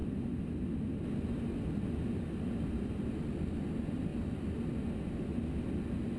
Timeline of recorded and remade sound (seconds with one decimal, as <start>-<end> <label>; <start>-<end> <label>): 0.0-6.2 recorded